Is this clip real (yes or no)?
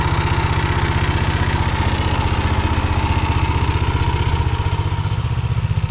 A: yes